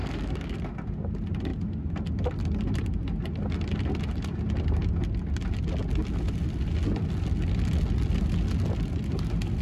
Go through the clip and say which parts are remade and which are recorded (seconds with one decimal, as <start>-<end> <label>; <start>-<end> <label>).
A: 0.0-0.6 remade; 0.6-9.6 recorded